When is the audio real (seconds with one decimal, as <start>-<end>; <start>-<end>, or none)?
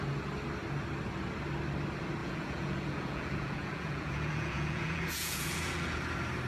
0.0-2.2; 6.0-6.5